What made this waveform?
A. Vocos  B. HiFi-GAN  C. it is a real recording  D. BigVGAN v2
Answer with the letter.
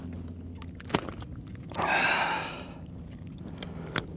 C